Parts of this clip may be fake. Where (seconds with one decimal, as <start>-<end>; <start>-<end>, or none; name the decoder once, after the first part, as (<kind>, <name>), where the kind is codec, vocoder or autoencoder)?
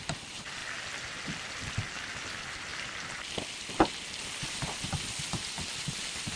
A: none